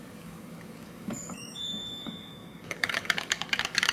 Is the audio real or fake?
fake